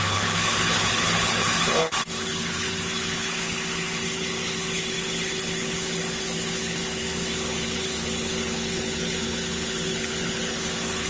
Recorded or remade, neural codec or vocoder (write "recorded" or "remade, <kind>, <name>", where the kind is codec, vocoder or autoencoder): remade, codec, HILCodec